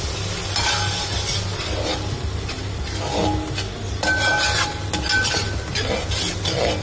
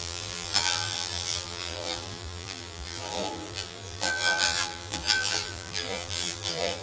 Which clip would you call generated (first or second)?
second